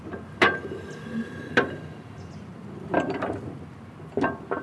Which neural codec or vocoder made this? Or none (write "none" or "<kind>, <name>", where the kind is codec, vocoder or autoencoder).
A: vocoder, BigVGAN v2